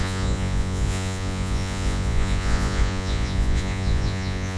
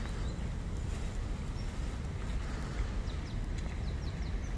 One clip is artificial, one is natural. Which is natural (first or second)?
second